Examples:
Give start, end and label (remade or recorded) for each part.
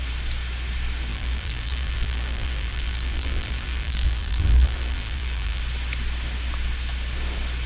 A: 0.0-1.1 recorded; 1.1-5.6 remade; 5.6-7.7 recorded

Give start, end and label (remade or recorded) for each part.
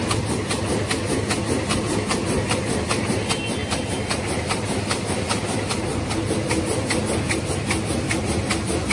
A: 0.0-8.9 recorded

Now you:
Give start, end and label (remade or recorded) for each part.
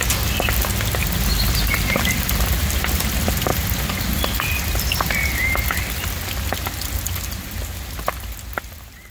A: 0.0-9.1 recorded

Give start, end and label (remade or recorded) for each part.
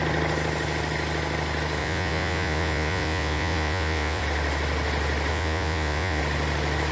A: 0.0-1.8 recorded; 1.8-4.2 remade; 4.2-5.3 recorded; 5.3-6.2 remade; 6.2-6.9 recorded